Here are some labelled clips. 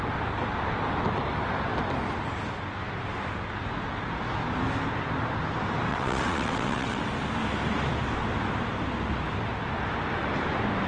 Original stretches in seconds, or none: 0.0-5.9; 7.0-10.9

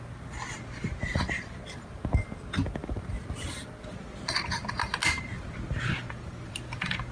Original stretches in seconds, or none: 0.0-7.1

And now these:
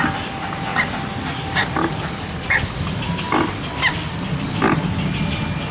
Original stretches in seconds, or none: 0.0-5.7

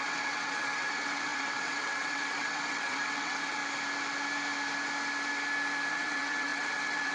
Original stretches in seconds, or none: 3.6-5.9